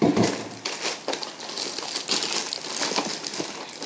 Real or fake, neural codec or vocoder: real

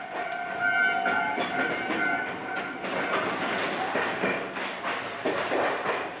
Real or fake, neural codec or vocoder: real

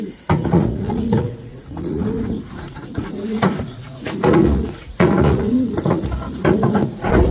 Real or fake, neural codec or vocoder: fake, vocoder, Vocos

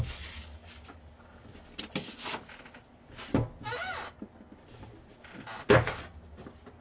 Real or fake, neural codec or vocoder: real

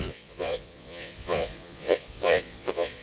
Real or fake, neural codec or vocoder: fake, vocoder, Vocos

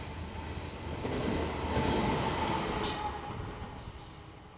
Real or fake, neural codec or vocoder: real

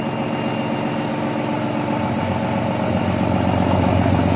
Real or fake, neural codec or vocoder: real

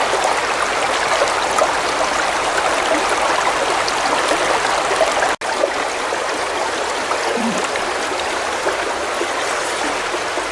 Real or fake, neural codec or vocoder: real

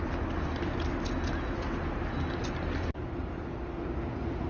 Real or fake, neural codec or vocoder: real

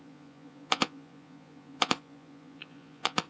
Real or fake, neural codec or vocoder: fake, vocoder, Vocos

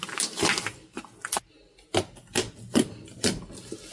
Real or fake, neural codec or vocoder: real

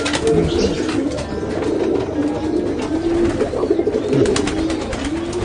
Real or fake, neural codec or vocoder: real